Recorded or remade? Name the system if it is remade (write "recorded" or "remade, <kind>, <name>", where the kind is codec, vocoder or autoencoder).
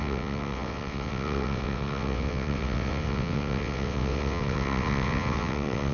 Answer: remade, vocoder, WaveNeXt